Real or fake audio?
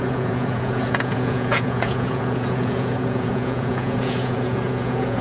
fake